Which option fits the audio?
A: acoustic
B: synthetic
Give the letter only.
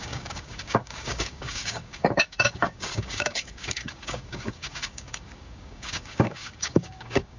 B